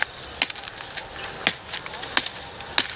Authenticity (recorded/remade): recorded